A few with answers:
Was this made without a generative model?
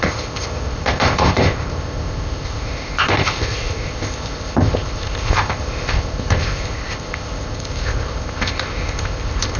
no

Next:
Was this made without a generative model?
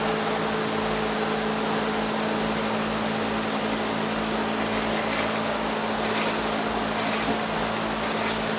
yes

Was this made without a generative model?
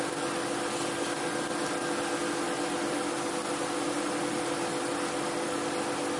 yes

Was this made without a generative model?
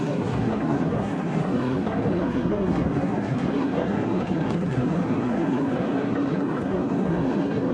no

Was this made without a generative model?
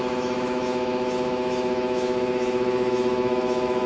no